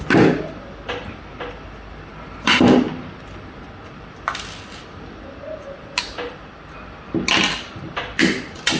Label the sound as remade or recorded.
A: recorded